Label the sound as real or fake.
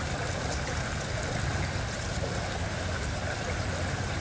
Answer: real